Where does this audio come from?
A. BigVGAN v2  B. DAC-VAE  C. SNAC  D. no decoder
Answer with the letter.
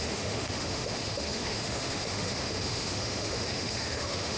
B